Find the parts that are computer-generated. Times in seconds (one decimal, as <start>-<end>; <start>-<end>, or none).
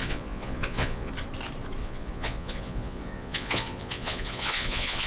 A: 0.0-1.1; 1.8-5.1